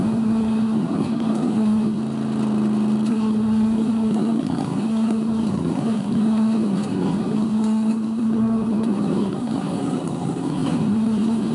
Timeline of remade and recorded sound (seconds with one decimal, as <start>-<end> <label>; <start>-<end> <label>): 0.0-2.0 remade; 2.0-3.1 recorded; 3.1-11.5 remade